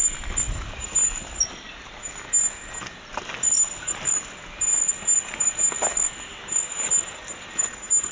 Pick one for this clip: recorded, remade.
recorded